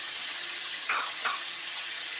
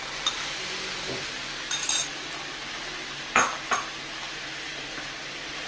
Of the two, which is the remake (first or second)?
first